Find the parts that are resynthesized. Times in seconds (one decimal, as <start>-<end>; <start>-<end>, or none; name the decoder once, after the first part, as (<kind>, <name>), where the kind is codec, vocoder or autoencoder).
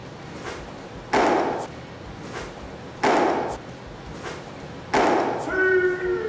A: none